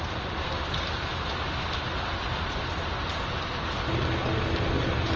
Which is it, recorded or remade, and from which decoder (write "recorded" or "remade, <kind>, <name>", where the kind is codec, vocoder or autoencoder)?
recorded